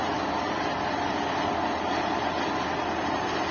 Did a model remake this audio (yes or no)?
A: no